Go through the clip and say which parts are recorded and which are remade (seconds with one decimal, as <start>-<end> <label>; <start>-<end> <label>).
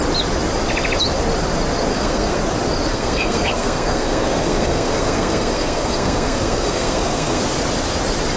0.0-1.9 recorded; 1.9-2.4 remade; 2.4-2.9 recorded; 2.9-7.4 remade; 7.4-8.4 recorded